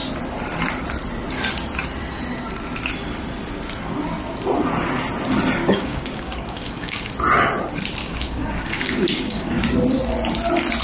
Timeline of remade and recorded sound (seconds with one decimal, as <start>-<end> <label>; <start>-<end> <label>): 0.0-5.6 recorded; 5.6-7.1 remade; 7.1-8.0 recorded; 8.0-9.6 remade; 9.6-10.8 recorded